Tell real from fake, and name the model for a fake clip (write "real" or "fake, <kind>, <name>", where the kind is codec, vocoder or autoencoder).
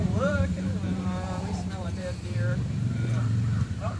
fake, vocoder, BigVGAN v2